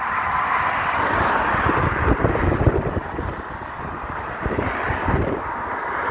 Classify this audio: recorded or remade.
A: recorded